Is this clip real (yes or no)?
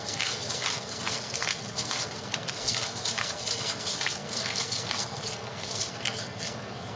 no